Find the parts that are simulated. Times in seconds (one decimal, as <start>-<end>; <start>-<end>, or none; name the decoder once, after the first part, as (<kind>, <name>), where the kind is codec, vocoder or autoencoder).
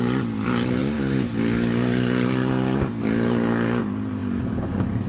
none